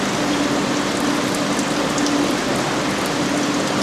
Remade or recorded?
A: recorded